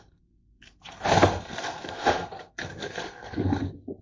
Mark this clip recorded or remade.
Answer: remade